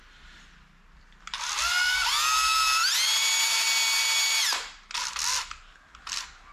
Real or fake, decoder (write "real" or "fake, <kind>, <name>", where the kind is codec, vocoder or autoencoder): real